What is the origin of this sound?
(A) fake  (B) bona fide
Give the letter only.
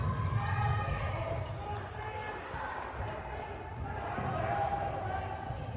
B